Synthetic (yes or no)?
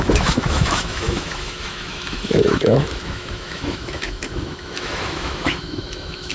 yes